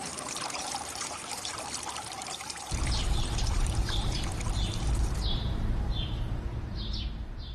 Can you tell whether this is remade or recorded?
remade